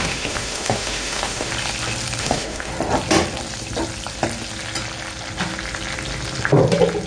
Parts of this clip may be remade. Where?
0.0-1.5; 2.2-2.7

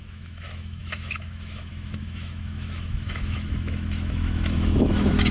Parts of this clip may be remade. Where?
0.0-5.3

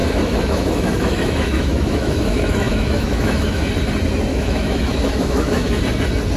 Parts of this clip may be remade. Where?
0.0-3.7; 4.3-5.8

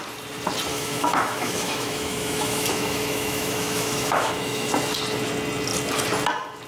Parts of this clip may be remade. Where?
0.7-4.7

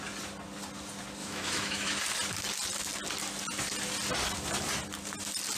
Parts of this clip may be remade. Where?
1.2-2.0

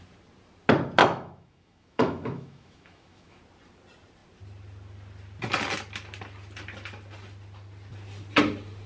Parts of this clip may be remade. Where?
1.0-3.4

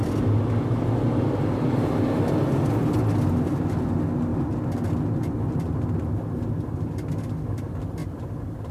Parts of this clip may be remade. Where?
none

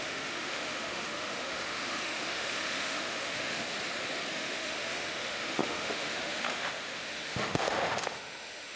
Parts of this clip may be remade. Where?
0.0-3.7; 4.3-8.8